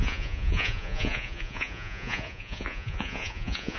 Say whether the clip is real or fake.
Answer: fake